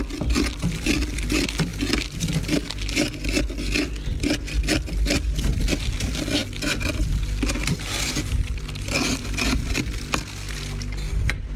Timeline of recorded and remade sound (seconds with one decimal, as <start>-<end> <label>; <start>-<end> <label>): 0.0-11.6 recorded